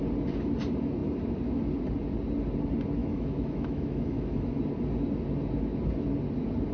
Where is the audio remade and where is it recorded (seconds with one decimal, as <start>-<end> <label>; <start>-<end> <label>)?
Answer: 0.0-3.0 recorded; 3.0-4.6 remade; 4.6-6.7 recorded

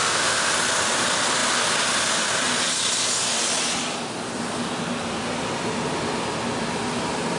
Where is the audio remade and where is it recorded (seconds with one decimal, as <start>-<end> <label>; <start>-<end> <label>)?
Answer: 0.0-0.5 remade; 0.5-7.4 recorded

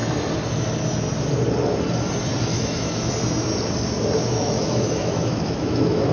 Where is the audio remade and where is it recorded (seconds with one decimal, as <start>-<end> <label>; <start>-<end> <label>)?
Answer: 0.0-2.5 recorded; 2.5-3.1 remade; 3.1-4.2 recorded; 4.2-6.1 remade

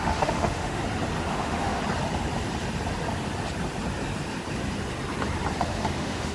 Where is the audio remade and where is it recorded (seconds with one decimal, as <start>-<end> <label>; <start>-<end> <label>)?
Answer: 0.0-0.8 remade; 0.8-1.3 recorded; 1.3-1.8 remade; 1.8-5.6 recorded; 5.6-6.3 remade

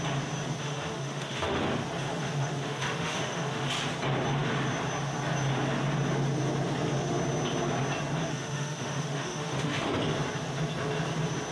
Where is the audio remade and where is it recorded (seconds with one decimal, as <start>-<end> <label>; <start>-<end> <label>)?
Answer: 0.0-0.6 recorded; 0.6-1.6 remade; 1.6-2.1 recorded; 2.1-3.7 remade; 3.7-8.3 recorded; 8.3-9.9 remade; 9.9-11.5 recorded

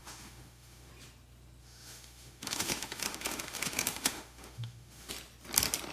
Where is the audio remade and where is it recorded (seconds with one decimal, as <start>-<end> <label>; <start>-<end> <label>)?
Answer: 0.0-0.9 remade; 0.9-1.6 recorded; 1.6-5.1 remade; 5.1-5.9 recorded